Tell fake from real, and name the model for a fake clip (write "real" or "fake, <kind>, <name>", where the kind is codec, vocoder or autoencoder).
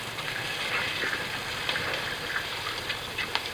real